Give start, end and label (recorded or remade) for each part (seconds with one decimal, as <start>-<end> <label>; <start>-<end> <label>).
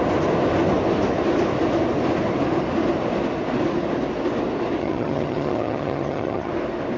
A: 0.0-4.8 recorded; 4.8-6.5 remade; 6.5-7.0 recorded